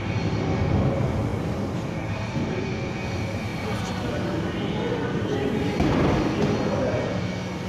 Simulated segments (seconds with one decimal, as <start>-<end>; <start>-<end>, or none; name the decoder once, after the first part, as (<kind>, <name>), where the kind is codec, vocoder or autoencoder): 1.3-1.9 (vocoder, BigVGAN v2); 3.5-4.2; 5.0-6.2